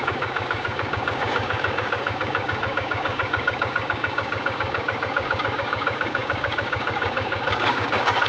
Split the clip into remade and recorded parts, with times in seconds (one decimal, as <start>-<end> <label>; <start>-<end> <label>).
0.0-8.3 remade